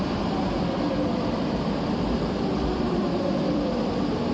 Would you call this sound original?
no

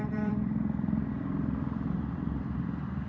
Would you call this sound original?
no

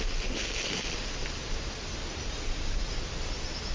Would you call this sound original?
yes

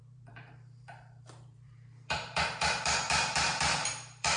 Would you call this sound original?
no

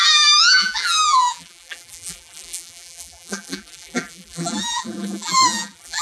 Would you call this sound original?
no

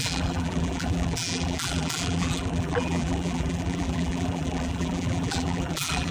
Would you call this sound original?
no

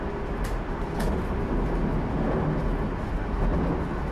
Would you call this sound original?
yes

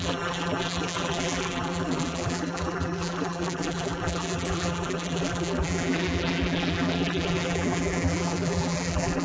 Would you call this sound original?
no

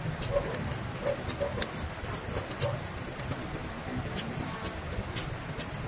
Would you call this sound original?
yes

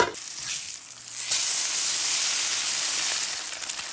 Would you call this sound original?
yes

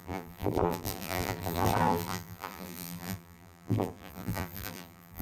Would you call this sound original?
no